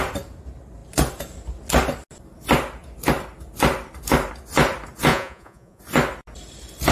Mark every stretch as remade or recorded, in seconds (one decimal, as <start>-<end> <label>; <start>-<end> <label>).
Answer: 0.0-5.1 recorded; 5.1-5.8 remade; 5.8-6.9 recorded